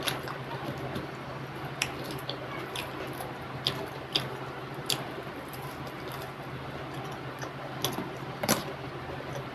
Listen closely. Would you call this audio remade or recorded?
recorded